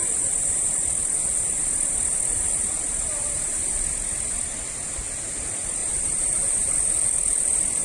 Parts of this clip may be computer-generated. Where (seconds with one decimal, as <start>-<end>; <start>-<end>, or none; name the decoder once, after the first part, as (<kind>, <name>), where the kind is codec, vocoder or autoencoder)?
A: 5.8-6.7 (vocoder, BigVGAN v2)